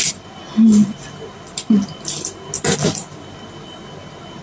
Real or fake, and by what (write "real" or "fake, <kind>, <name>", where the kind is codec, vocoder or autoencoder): real